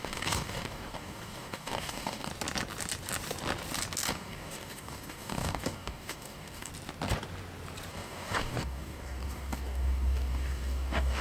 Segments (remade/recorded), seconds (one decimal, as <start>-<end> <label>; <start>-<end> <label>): 0.0-2.3 remade; 2.3-4.1 recorded; 4.1-6.7 remade; 6.7-7.9 recorded; 7.9-11.2 remade